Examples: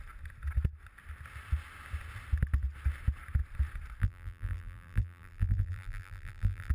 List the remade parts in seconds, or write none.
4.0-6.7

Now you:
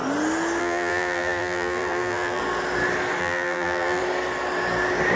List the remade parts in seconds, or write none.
0.6-2.4; 3.2-4.0

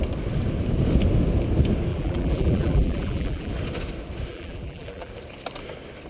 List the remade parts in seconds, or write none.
1.9-3.5; 4.3-5.1

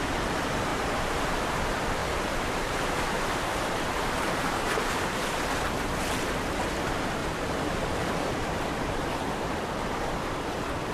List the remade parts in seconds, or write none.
0.7-1.4; 2.0-5.2; 7.2-9.1

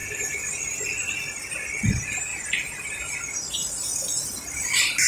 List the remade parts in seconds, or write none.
0.0-5.1

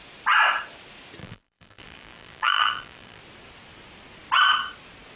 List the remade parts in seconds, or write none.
1.2-3.2

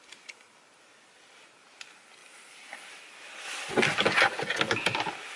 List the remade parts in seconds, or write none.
2.2-3.7